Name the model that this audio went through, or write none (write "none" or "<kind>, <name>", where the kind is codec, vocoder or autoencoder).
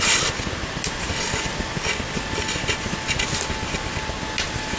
none